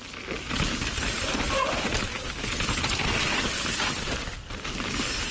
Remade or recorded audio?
recorded